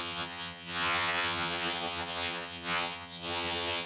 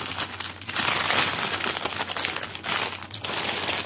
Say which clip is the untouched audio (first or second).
second